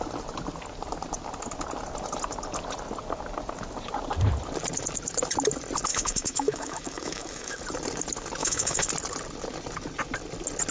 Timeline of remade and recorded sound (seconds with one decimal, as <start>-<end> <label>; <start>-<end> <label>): 0.0-5.9 recorded; 5.9-7.6 remade; 7.6-8.4 recorded; 8.4-8.9 remade; 8.9-10.7 recorded